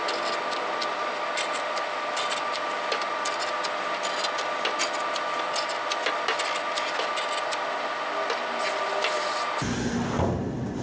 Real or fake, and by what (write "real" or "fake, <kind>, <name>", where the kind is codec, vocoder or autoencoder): real